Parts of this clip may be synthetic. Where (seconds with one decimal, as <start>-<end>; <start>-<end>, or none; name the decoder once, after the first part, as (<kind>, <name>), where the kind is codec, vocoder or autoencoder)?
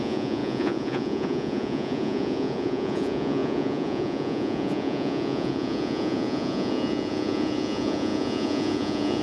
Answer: 0.0-9.2 (vocoder, Vocos)